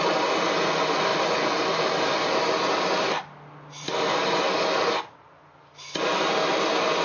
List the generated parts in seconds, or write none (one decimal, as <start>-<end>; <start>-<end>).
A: none